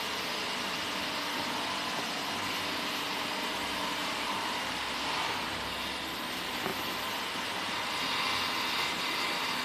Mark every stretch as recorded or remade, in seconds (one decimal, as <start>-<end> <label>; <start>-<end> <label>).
0.0-4.0 recorded; 4.0-5.3 remade; 5.3-9.6 recorded